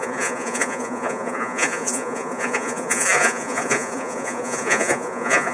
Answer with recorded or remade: remade